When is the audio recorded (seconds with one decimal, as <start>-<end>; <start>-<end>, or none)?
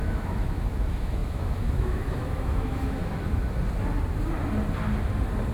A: 3.0-5.5